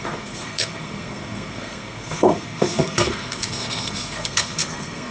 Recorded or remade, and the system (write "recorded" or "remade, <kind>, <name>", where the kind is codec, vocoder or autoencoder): remade, codec, SNAC